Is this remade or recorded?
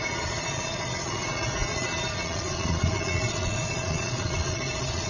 remade